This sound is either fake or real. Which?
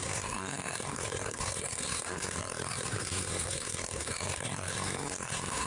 fake